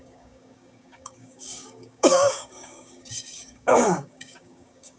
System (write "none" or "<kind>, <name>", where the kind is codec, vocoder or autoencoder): codec, DAC